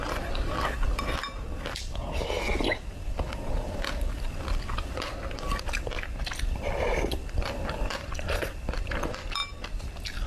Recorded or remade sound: recorded